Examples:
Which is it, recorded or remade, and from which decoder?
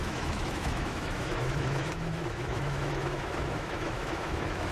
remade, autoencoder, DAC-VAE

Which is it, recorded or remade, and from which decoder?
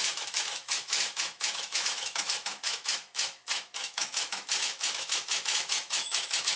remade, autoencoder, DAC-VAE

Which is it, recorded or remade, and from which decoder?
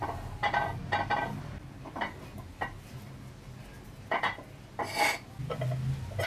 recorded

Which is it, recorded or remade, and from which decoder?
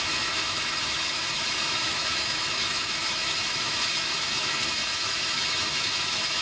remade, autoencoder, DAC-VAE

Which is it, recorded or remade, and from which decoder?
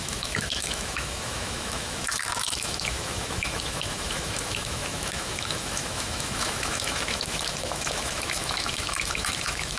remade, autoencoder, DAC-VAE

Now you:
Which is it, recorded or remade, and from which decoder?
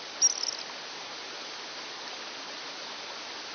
recorded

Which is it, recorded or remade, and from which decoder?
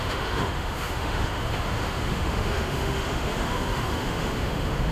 remade, autoencoder, DAC-VAE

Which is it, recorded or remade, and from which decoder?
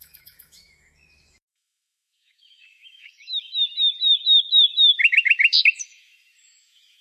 remade, autoencoder, DAC-VAE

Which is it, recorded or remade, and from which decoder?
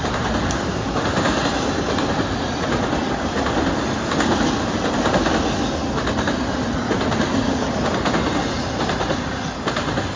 recorded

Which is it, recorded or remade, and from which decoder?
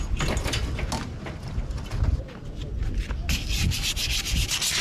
recorded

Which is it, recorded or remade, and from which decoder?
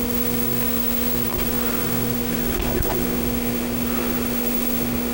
remade, autoencoder, DAC-VAE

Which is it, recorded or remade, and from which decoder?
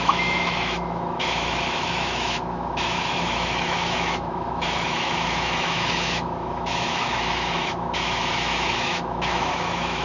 remade, autoencoder, DAC-VAE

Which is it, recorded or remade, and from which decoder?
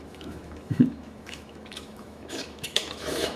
remade, autoencoder, DAC-VAE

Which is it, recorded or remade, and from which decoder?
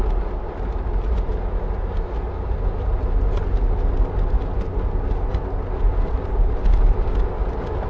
recorded